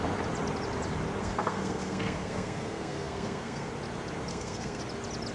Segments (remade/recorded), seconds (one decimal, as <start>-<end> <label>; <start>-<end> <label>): 0.0-1.2 recorded; 1.2-3.7 remade; 3.7-4.3 recorded; 4.3-4.8 remade; 4.8-5.3 recorded